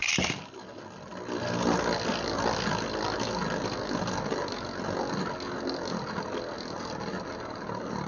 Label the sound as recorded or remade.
recorded